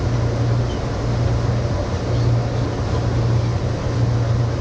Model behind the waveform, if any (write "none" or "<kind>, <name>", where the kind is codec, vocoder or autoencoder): none